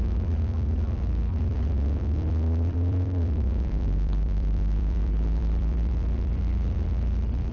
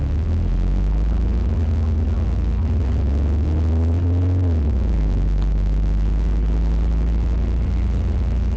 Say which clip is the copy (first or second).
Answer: first